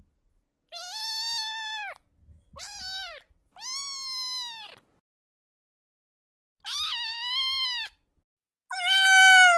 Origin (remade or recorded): recorded